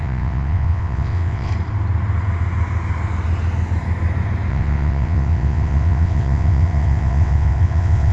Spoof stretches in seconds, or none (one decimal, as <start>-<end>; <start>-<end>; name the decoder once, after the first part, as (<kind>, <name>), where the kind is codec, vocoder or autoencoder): 0.0-1.5 (vocoder, WaveNeXt); 4.5-8.1